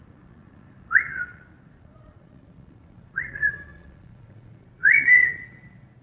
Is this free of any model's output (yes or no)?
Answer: no